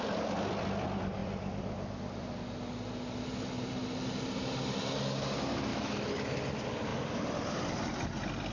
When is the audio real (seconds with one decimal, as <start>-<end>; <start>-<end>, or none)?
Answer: 0.0-5.7; 6.4-8.5